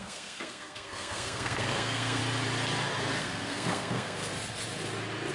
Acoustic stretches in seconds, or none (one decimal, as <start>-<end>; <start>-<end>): 2.2-3.2; 4.3-5.3